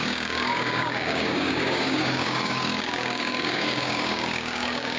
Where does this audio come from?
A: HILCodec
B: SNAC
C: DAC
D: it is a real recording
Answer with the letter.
C